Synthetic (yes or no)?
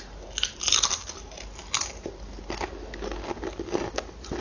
no